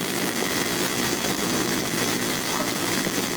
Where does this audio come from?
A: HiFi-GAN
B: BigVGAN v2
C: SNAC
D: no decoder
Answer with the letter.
B